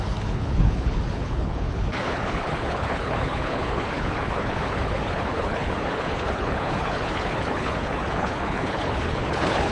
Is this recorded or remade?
remade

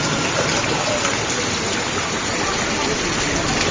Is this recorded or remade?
recorded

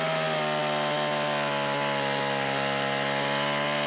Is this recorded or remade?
recorded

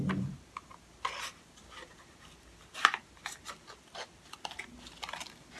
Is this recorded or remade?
recorded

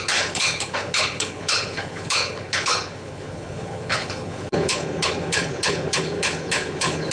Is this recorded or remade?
remade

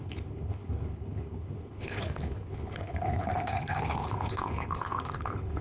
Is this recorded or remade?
remade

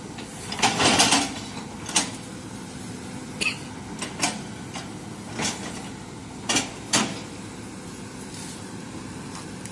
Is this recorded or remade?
recorded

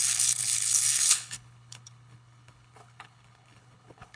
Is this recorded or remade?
remade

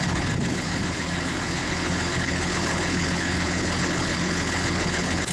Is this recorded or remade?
remade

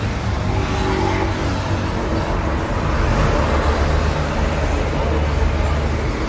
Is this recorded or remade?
recorded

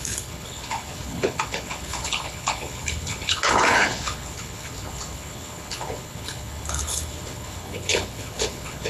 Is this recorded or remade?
remade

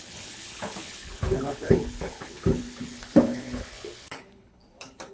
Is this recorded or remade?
remade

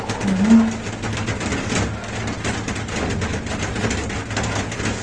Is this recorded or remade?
recorded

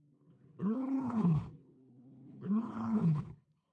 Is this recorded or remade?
remade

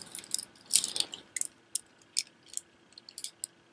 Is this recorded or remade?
recorded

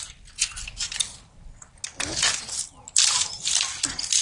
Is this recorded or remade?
recorded